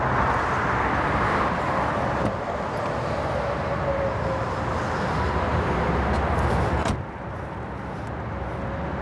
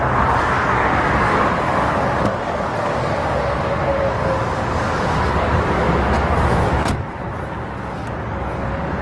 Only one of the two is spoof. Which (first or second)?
second